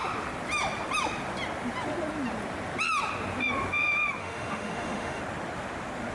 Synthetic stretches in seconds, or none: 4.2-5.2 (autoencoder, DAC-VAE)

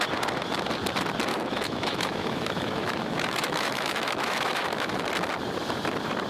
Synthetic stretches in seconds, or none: 1.3-5.1 (autoencoder, DAC-VAE)

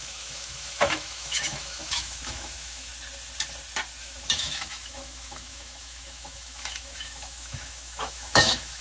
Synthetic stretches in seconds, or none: 0.0-2.9 (autoencoder, DAC-VAE); 4.0-8.8

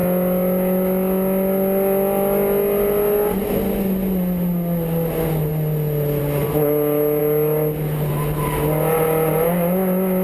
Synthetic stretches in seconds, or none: none